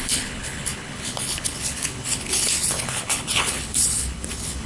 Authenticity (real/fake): fake